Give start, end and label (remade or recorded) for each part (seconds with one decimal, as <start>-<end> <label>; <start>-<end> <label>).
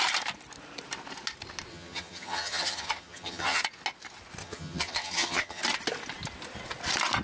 0.0-1.7 recorded; 1.7-3.6 remade; 3.6-4.4 recorded; 4.4-5.6 remade; 5.6-7.2 recorded